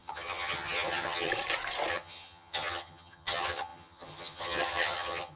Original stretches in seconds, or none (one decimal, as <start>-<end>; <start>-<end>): 1.3-1.9